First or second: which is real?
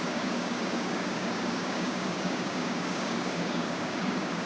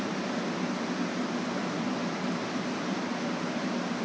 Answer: second